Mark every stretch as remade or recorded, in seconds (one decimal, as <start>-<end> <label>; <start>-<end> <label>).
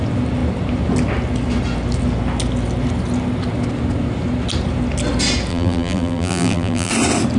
0.0-5.5 recorded; 5.5-6.9 remade; 6.9-7.4 recorded